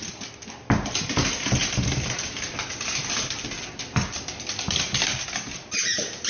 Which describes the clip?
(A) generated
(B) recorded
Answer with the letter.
B